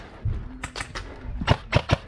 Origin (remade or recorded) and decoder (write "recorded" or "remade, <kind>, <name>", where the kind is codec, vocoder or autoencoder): recorded